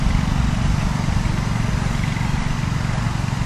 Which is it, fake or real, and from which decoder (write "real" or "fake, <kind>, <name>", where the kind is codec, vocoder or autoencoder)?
real